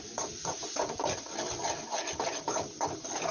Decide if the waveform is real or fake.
real